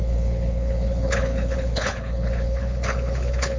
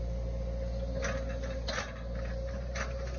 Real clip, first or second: second